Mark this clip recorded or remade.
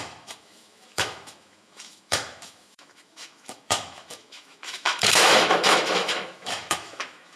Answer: remade